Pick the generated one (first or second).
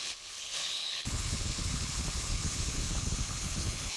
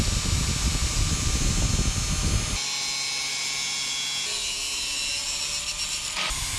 first